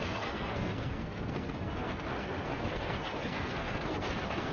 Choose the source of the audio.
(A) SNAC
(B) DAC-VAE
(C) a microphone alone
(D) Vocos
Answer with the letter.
A